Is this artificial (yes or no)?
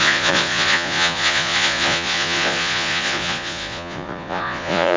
yes